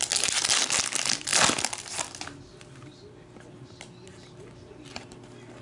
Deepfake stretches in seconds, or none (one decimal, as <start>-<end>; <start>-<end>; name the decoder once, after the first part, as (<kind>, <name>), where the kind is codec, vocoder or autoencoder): none